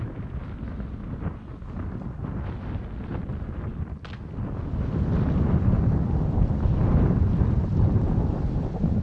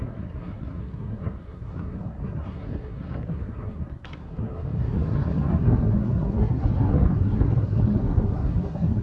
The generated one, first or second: second